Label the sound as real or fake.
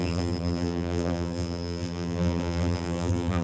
fake